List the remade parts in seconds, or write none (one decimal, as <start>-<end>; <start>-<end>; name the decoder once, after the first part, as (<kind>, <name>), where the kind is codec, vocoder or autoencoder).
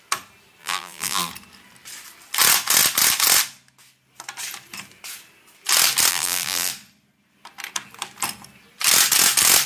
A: 0.6-1.3 (vocoder, BigVGAN v2); 6.1-6.7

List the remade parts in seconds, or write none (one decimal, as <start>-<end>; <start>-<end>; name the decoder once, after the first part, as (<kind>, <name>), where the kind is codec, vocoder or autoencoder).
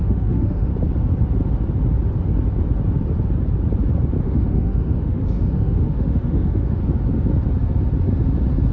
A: 0.0-0.7 (autoencoder, DAC-VAE); 4.2-6.8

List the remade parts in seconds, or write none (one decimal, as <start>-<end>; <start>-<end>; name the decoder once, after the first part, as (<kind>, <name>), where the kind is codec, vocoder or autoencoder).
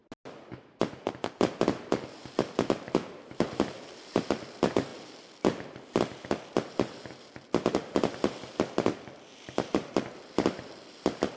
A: 2.2-4.9 (vocoder, BigVGAN v2); 6.1-11.4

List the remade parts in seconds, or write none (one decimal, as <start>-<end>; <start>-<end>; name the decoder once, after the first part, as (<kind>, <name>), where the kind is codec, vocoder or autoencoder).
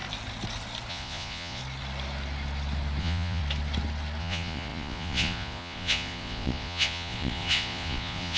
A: 0.9-1.6 (vocoder, Vocos); 3.0-3.4; 4.2-8.4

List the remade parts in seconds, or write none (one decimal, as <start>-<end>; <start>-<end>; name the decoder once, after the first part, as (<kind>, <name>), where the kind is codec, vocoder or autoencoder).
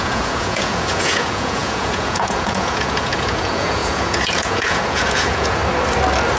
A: 0.0-5.6 (vocoder, Vocos)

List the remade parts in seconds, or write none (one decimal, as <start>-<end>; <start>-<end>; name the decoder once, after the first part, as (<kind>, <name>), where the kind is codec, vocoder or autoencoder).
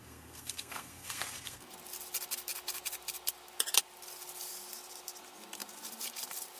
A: 0.0-1.7 (codec, SNAC)